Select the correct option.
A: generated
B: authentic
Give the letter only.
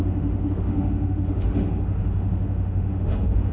A